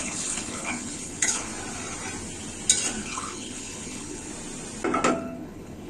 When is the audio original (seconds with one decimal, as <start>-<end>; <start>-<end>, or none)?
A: 1.5-3.0; 4.3-5.1